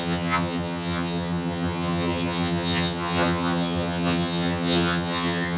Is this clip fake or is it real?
fake